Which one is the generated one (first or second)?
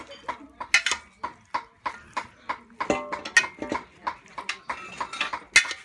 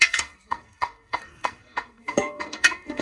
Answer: second